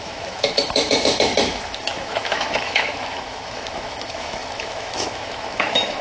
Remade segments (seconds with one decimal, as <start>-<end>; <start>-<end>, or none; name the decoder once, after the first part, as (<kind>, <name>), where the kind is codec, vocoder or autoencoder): 0.0-6.0 (autoencoder, DAC-VAE)